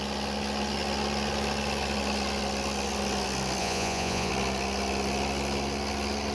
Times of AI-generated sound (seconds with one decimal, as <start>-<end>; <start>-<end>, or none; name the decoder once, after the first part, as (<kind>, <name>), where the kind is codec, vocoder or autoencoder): 3.6-4.3 (vocoder, Vocos)